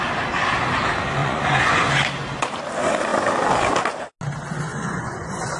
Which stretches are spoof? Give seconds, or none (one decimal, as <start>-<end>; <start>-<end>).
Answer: 1.2-1.9; 4.7-5.6